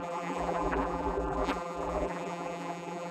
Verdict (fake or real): fake